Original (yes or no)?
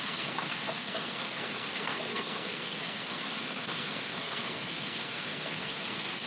no